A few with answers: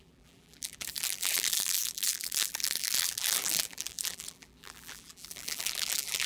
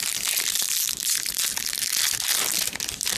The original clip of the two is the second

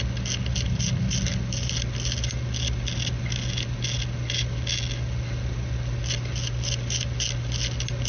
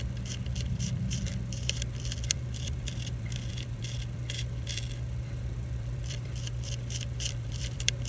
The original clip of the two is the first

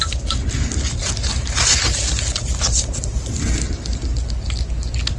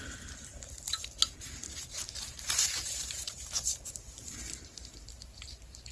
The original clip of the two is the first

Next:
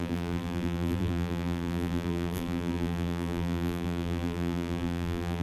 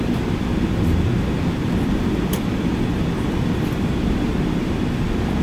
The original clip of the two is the second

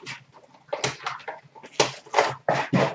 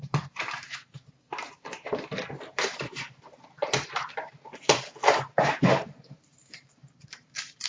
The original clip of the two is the first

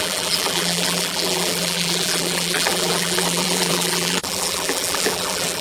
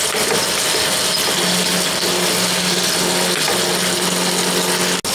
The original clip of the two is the second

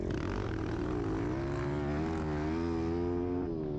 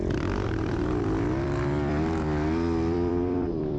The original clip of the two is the first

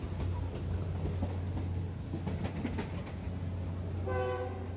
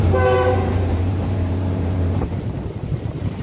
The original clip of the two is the first